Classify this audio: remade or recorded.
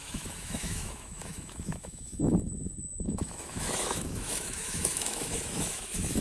remade